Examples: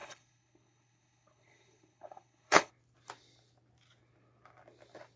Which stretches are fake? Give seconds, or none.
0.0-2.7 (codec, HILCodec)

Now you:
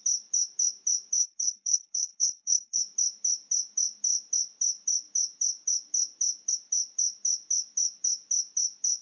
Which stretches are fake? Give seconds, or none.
1.2-2.8 (codec, HILCodec)

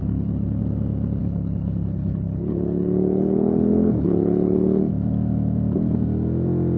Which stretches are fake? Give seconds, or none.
0.0-0.6 (codec, HILCodec); 1.2-4.9

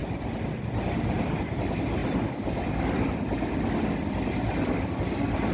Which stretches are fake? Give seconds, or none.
none

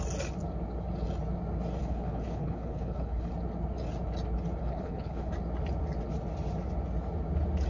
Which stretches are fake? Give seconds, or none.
1.8-3.3 (codec, HILCodec); 4.6-5.3

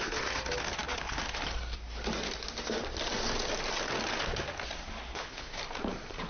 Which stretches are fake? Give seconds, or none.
5.1-5.6 (codec, HILCodec)

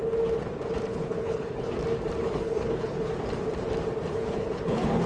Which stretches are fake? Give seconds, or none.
0.9-1.7 (codec, HILCodec); 2.2-3.1; 4.1-5.1